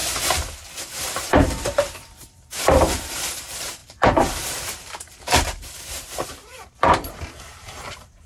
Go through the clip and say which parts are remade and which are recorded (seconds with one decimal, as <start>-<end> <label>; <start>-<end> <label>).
0.0-0.9 recorded; 0.9-8.3 remade